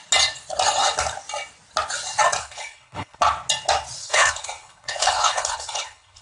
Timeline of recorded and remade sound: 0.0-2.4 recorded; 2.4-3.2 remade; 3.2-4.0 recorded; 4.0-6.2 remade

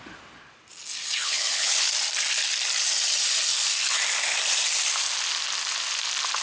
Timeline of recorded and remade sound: 0.0-1.2 recorded; 1.2-1.9 remade; 1.9-6.4 recorded

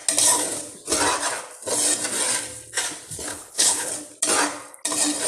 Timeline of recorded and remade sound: 0.0-3.3 recorded; 3.3-3.9 remade; 3.9-5.3 recorded